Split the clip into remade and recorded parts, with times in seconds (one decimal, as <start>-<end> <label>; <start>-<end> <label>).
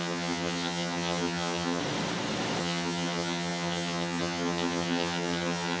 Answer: 0.0-1.8 remade; 1.8-2.6 recorded; 2.6-5.8 remade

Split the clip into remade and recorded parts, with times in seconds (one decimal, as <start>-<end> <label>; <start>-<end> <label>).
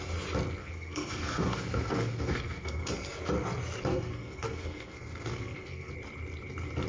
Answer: 0.0-0.6 recorded; 0.6-2.9 remade; 2.9-3.9 recorded; 3.9-5.9 remade; 5.9-6.9 recorded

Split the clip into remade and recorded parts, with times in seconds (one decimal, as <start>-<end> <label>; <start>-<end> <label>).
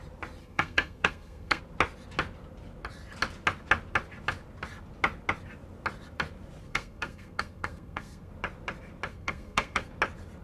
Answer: 0.0-0.4 recorded; 0.4-1.6 remade; 1.6-6.6 recorded; 6.6-8.3 remade; 8.3-9.1 recorded; 9.1-9.9 remade; 9.9-10.4 recorded